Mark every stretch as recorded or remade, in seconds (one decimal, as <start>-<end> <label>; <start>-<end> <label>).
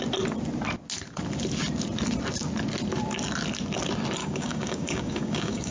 0.0-4.2 recorded; 4.2-5.7 remade